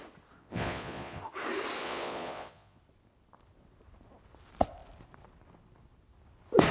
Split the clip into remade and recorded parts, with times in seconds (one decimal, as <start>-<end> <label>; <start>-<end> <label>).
0.0-0.4 recorded; 0.4-1.2 remade; 1.2-1.8 recorded; 1.8-2.8 remade; 2.8-6.7 recorded